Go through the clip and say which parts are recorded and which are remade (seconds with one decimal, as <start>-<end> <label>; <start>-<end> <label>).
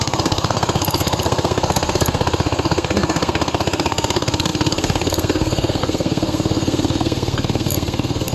0.0-8.3 remade